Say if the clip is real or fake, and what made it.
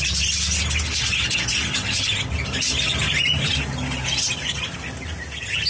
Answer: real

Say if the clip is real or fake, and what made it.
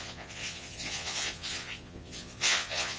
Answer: fake, vocoder, Vocos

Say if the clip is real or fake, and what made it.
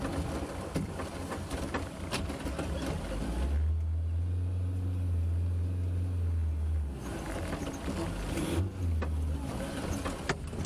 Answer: real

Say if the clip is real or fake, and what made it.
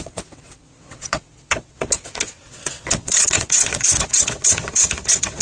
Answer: fake, vocoder, WaveNeXt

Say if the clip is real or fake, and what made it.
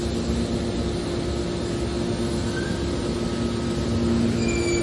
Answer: real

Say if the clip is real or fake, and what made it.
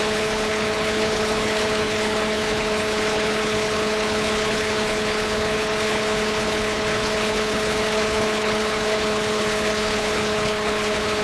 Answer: fake, codec, HILCodec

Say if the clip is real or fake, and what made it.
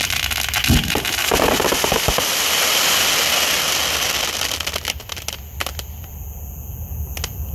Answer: real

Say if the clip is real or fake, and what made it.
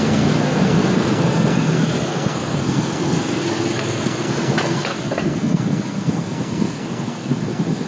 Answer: fake, codec, SNAC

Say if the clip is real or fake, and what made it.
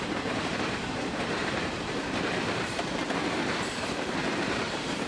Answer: fake, vocoder, BigVGAN v2